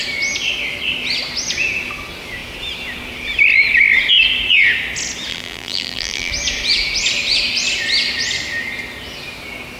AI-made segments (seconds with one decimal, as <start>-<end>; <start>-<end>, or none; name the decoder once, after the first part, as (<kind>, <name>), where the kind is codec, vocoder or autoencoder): 5.3-6.3 (vocoder, BigVGAN v2)

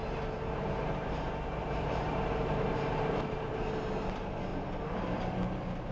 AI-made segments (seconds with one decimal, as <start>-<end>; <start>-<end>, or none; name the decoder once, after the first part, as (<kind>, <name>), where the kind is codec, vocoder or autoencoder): 0.0-3.5 (vocoder, BigVGAN v2); 4.5-5.2